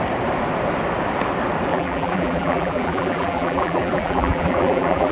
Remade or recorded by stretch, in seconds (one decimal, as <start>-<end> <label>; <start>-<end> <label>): 0.0-1.7 recorded; 1.7-5.1 remade